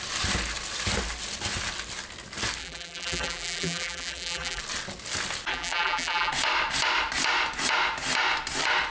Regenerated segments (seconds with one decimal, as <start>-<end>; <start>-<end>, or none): 2.6-4.6; 5.5-6.3

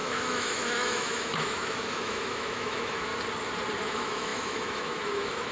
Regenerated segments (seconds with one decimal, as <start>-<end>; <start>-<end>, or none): 0.0-3.1; 3.8-5.5

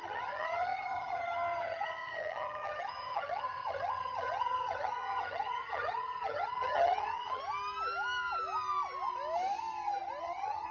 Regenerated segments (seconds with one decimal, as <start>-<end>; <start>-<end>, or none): 0.0-7.4; 10.2-10.7

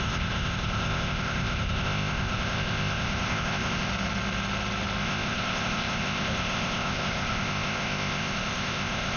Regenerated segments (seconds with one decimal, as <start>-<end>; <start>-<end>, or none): 0.0-3.9; 5.0-9.2